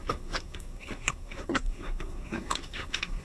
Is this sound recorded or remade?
remade